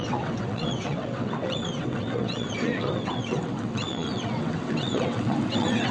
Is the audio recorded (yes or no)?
no